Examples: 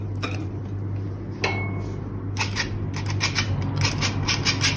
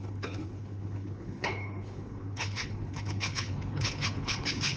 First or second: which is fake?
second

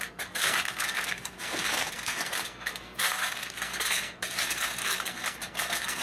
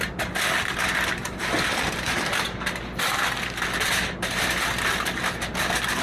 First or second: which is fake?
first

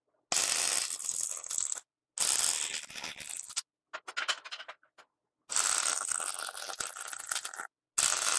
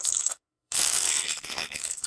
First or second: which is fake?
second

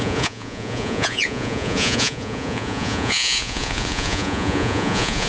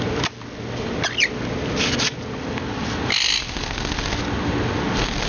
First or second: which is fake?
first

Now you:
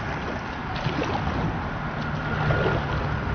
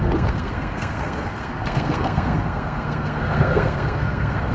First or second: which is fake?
second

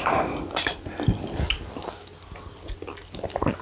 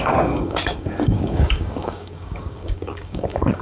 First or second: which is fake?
second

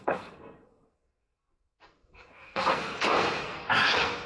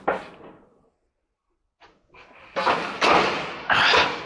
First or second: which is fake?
first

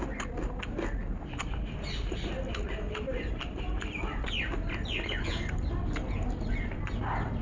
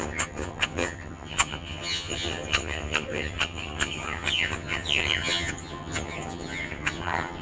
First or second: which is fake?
second